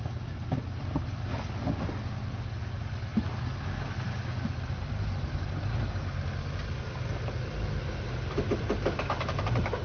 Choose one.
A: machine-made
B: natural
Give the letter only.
B